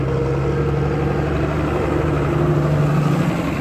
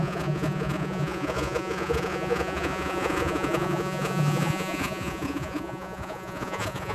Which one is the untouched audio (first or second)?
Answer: first